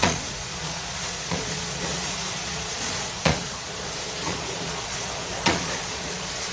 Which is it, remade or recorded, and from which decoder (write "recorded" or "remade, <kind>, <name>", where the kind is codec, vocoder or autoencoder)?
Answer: remade, vocoder, Vocos